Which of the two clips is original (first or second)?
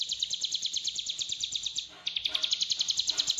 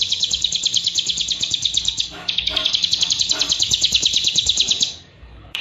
first